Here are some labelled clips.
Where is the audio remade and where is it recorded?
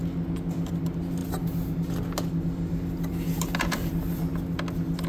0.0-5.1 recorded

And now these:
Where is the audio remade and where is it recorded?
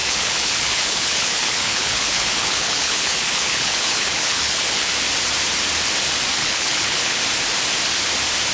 0.0-4.9 remade; 4.9-6.4 recorded; 6.4-7.2 remade; 7.2-8.5 recorded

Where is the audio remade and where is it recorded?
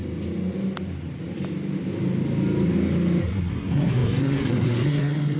0.0-3.2 recorded; 3.2-5.4 remade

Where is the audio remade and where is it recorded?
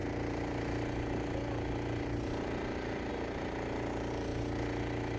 0.0-5.2 recorded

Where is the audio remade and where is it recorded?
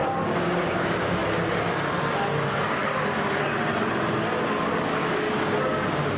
0.0-1.2 remade; 1.2-4.9 recorded; 4.9-6.2 remade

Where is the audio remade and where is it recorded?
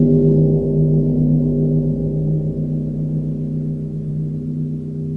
0.0-5.2 recorded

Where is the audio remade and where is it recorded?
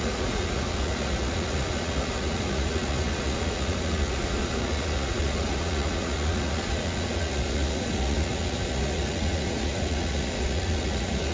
0.0-11.3 remade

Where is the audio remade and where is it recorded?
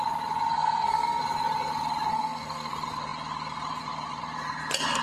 0.0-0.5 recorded; 0.5-1.2 remade; 1.2-2.1 recorded; 2.1-2.7 remade; 2.7-5.0 recorded